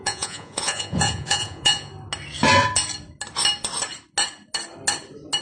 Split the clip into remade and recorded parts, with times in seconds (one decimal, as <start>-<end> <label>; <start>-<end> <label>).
0.0-1.9 remade; 1.9-5.4 recorded